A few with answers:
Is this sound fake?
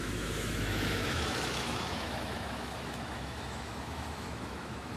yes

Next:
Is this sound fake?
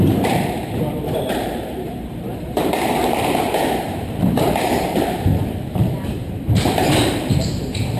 yes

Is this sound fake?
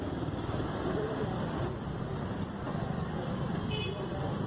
yes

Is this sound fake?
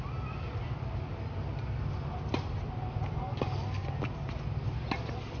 no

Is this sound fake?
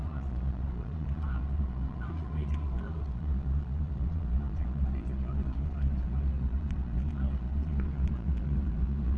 yes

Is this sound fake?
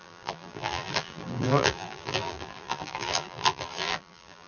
yes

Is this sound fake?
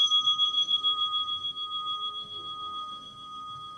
yes